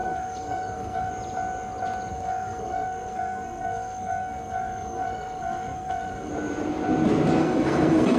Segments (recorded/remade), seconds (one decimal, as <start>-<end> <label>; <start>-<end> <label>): 0.0-1.1 remade; 1.1-2.1 recorded; 2.1-6.3 remade; 6.3-7.4 recorded; 7.4-8.2 remade